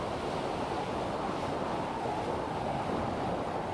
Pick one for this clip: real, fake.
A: real